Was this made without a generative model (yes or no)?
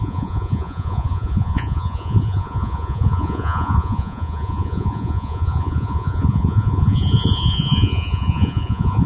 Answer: no